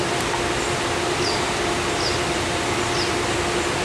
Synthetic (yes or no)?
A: no